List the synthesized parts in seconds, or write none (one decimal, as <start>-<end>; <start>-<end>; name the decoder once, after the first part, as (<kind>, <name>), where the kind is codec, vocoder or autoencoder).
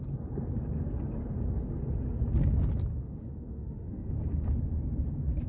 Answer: 2.9-4.1 (autoencoder, DAC-VAE)